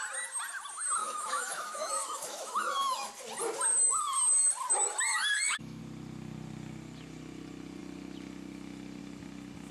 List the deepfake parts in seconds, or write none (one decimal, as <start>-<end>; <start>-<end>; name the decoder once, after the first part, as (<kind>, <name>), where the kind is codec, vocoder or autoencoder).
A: 1.0-3.1 (autoencoder, DAC-VAE); 5.1-5.8

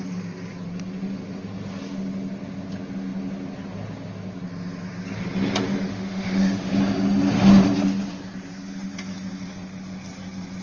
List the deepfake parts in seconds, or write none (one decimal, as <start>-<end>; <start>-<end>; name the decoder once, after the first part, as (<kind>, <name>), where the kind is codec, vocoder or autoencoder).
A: 5.9-6.7 (autoencoder, DAC-VAE)

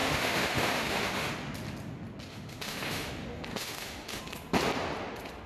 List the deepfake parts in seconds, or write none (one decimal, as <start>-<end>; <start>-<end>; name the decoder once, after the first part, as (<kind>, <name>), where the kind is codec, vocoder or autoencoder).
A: 0.0-1.3 (autoencoder, DAC-VAE); 2.3-3.1; 3.5-4.2